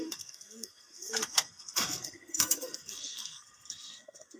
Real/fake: fake